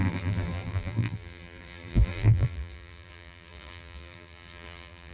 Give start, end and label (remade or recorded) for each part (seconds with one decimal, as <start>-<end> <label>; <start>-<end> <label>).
0.0-5.1 remade